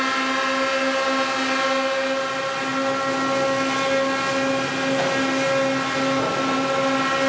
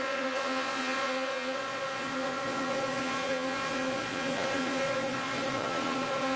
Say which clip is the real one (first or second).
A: first